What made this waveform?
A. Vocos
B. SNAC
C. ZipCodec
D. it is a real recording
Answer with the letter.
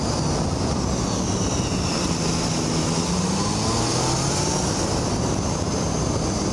D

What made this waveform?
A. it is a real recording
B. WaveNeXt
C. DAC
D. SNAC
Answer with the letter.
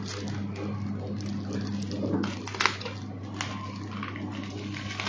A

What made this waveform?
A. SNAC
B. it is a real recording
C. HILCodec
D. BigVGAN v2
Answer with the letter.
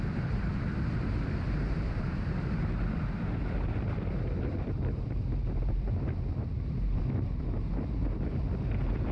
D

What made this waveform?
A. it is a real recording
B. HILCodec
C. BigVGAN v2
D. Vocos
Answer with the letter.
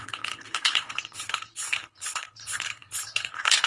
B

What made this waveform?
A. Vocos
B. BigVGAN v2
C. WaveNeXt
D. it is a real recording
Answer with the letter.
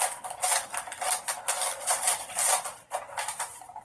D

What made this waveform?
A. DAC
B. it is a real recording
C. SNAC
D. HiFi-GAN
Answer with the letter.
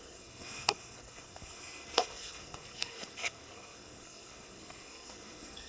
C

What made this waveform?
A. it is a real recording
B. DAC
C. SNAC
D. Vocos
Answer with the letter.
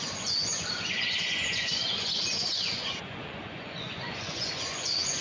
D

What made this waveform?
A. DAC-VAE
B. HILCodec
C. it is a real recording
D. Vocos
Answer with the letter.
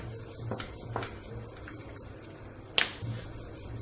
C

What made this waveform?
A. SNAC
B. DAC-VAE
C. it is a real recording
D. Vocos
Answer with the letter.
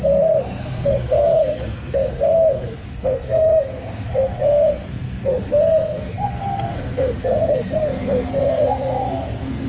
A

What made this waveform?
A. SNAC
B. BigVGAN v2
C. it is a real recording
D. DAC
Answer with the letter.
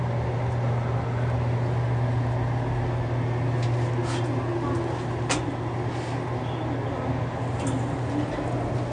C